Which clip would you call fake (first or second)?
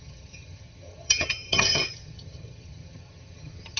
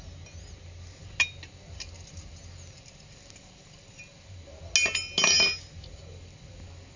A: first